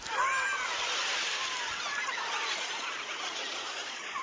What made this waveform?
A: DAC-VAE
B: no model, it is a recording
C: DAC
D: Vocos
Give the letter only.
B